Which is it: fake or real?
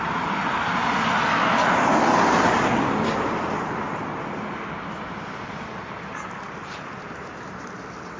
real